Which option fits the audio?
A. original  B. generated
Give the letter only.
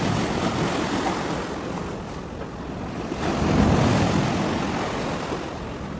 A